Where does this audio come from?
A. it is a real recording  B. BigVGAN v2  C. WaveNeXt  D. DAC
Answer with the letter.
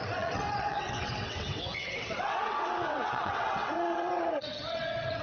C